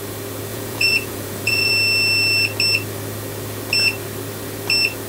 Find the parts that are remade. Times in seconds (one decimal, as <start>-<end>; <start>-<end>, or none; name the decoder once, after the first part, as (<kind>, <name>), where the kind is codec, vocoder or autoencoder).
0.5-1.7 (vocoder, Vocos)